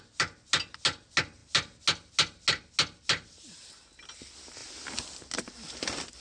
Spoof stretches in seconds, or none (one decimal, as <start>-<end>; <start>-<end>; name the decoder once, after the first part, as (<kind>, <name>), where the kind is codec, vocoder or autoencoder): none